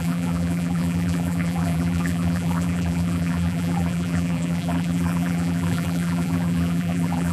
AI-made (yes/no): yes